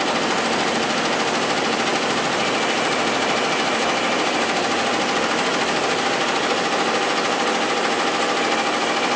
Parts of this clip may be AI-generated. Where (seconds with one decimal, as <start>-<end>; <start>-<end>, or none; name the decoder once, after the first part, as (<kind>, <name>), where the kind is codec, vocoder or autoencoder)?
none